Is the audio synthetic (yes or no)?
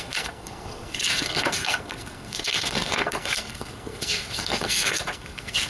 yes